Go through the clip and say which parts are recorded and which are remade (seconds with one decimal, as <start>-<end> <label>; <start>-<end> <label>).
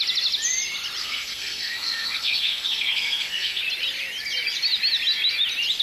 0.0-1.0 recorded; 1.0-3.6 remade; 3.6-5.8 recorded